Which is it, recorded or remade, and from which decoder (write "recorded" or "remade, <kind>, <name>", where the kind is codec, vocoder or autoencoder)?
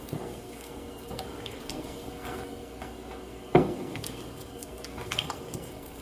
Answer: remade, codec, SNAC